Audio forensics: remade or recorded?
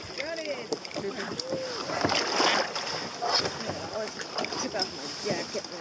recorded